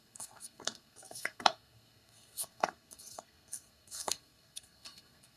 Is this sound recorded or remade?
remade